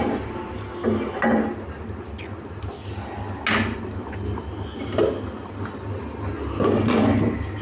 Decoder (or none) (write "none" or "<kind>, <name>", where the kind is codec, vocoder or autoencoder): none